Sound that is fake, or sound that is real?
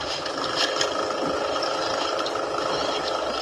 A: real